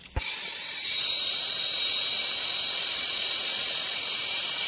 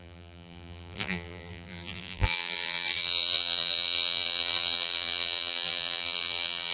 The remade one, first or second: second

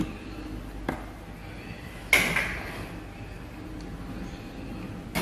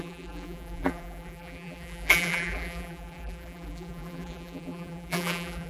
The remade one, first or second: second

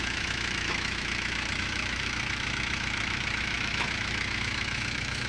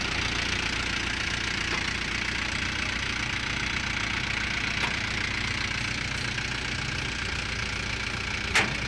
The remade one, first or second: first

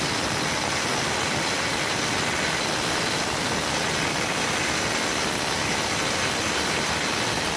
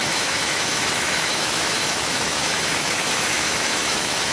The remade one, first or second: second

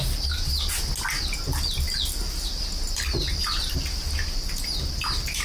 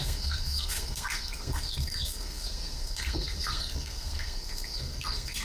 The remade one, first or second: second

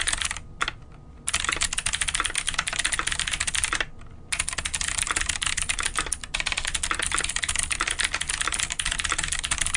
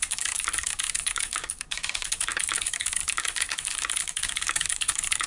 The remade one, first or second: second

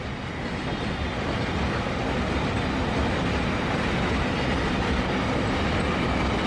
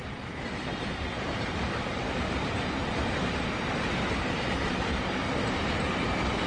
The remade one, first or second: second